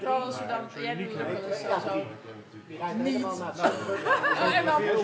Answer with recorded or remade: recorded